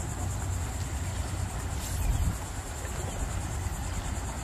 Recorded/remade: recorded